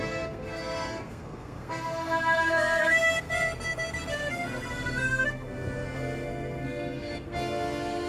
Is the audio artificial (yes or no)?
yes